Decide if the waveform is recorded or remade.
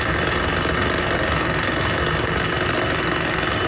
recorded